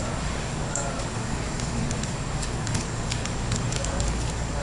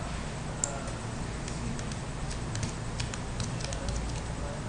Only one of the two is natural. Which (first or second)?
second